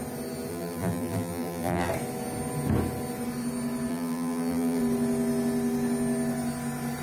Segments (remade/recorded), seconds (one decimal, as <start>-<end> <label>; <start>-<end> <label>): 0.0-0.5 recorded; 0.5-1.9 remade; 1.9-3.9 recorded; 3.9-4.8 remade; 4.8-7.0 recorded